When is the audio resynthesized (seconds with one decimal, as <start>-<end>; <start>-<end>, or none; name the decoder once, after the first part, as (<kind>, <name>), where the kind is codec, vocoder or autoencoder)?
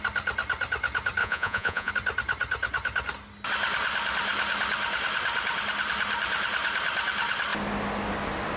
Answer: 1.2-1.9 (vocoder, Vocos)